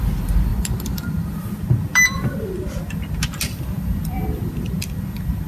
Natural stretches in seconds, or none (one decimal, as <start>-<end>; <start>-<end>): 0.0-5.5